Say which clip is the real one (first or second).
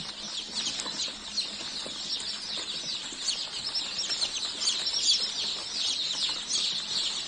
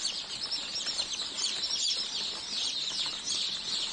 first